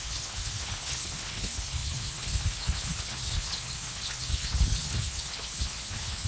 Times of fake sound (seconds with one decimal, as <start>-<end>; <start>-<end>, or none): 0.0-6.3